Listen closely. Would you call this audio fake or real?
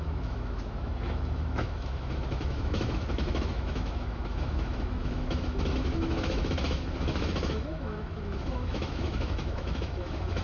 fake